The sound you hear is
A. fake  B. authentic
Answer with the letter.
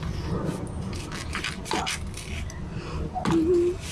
B